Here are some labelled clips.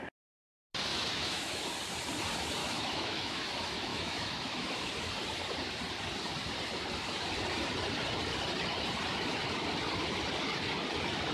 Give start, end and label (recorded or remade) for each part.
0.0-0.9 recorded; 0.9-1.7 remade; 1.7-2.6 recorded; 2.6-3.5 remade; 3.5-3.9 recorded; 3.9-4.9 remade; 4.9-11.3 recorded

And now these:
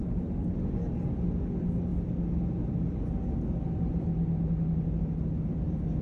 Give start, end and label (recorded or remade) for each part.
0.0-6.0 recorded

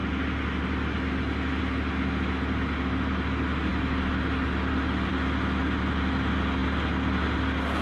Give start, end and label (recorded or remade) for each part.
0.0-7.8 recorded